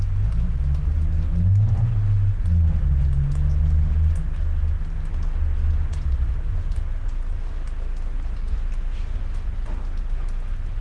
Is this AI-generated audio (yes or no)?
no